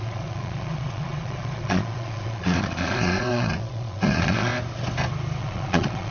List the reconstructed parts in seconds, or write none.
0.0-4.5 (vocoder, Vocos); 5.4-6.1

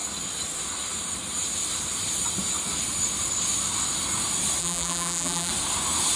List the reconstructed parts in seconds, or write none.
4.6-5.5 (vocoder, BigVGAN v2)

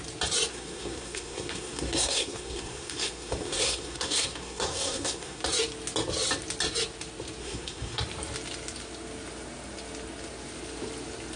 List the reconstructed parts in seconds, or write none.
0.5-5.4 (codec, SNAC); 7.4-8.0

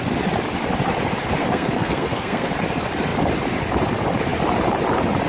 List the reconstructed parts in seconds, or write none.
1.4-2.5 (codec, SNAC)

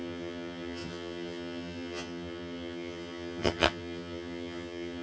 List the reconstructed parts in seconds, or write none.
0.0-5.0 (vocoder, HiFi-GAN)

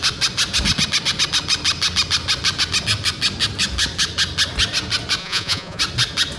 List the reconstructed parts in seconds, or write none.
5.2-5.8 (vocoder, Vocos)